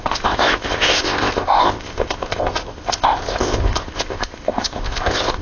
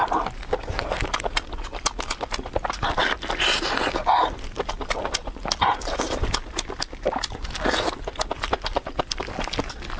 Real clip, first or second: second